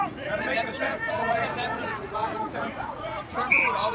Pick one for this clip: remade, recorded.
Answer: remade